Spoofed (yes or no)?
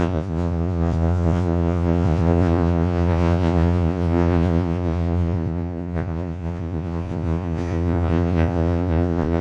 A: yes